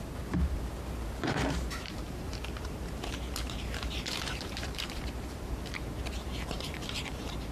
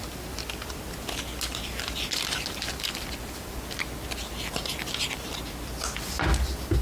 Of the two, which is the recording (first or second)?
second